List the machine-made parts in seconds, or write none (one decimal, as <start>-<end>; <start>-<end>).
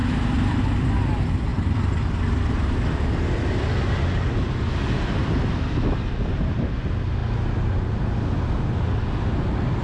0.0-0.6; 1.5-6.5